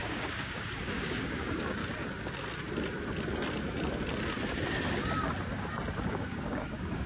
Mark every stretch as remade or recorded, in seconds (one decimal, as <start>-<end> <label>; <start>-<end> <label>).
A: 0.0-1.8 remade; 1.8-6.1 recorded; 6.1-7.1 remade